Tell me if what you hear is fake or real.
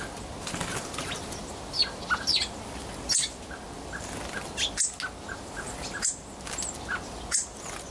real